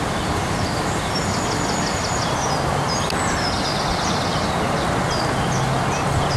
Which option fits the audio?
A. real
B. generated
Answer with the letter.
A